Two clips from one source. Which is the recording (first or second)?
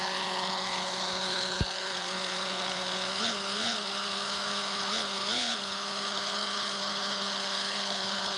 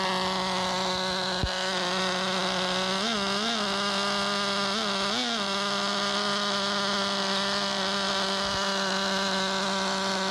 second